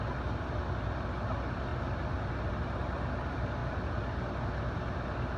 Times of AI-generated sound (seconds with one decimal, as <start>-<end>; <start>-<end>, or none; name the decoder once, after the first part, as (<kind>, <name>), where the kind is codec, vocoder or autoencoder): none